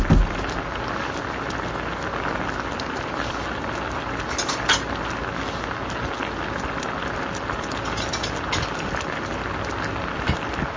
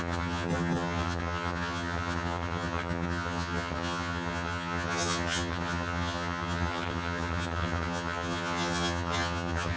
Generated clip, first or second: second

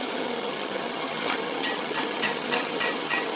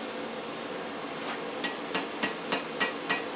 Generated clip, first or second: first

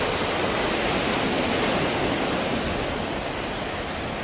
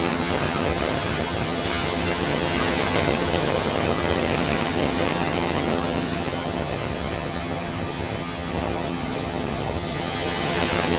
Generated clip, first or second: second